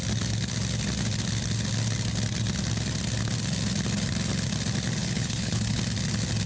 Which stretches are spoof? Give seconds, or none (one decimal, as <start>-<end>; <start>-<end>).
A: 5.0-5.8